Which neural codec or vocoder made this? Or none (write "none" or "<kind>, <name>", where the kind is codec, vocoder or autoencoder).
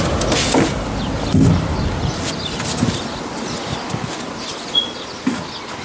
none